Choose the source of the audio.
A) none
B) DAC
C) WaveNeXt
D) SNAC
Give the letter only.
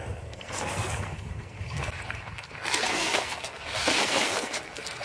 D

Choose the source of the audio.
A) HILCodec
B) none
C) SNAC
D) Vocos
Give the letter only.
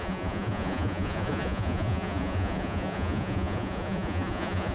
D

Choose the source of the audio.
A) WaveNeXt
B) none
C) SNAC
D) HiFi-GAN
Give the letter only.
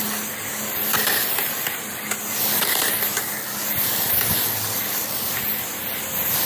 B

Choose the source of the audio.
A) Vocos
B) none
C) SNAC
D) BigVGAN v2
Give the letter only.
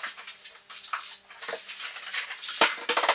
B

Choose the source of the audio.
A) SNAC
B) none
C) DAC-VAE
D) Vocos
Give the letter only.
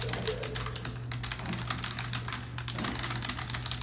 B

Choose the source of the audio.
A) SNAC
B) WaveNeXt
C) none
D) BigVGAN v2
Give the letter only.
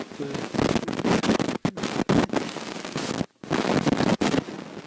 C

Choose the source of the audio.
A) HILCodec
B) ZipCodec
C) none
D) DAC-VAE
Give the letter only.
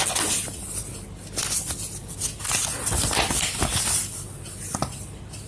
C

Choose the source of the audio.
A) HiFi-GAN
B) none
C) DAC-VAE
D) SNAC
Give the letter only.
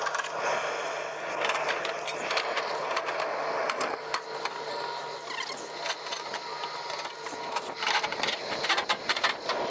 B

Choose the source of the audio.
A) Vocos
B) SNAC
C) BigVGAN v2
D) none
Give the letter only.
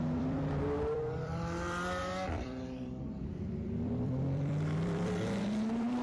C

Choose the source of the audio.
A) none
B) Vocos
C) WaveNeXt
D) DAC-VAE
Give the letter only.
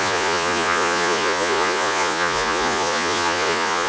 B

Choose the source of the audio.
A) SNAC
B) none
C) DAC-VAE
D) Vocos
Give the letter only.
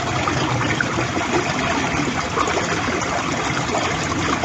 B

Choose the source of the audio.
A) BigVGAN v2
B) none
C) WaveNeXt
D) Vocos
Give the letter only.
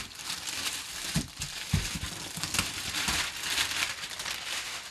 A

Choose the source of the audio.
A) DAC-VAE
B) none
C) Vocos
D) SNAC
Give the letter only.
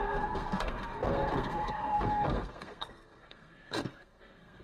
D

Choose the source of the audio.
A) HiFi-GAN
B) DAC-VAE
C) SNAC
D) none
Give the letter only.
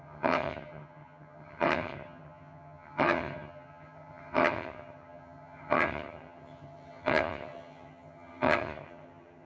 A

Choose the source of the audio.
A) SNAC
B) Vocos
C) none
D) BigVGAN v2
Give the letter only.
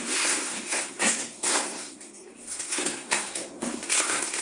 A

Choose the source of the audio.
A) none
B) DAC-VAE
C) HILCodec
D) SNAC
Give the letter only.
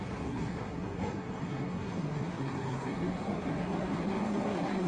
D